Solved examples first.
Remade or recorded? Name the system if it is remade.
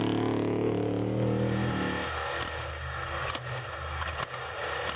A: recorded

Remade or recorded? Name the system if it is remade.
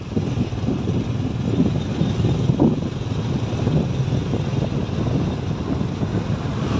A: recorded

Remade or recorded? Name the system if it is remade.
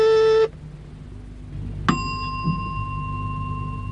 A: recorded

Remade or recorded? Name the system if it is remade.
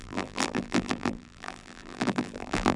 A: remade, vocoder, BigVGAN v2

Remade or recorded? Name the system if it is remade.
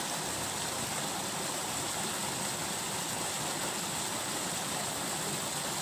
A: recorded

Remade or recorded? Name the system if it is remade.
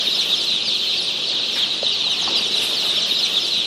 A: recorded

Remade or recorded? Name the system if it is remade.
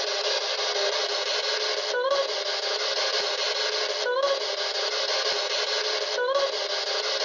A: recorded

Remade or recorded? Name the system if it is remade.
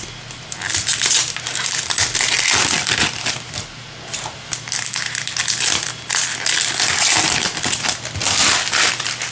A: recorded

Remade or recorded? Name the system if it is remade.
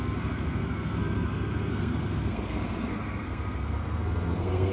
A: remade, codec, SNAC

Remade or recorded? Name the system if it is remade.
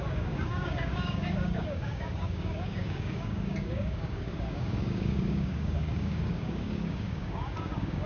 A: remade, codec, DAC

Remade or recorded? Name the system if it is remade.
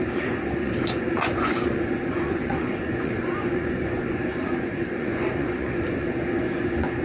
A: remade, vocoder, Vocos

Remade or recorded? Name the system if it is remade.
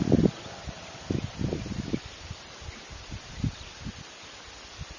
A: recorded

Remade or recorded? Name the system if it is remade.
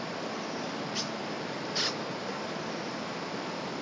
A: recorded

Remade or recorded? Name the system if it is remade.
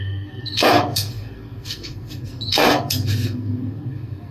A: remade, codec, SNAC